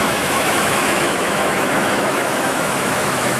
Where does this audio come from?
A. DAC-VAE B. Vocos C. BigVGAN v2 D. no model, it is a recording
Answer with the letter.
A